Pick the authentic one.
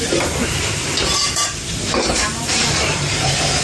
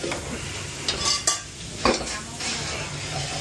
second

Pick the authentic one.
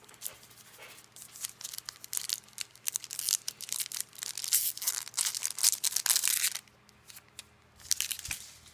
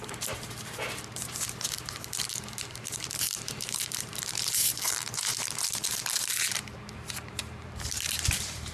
first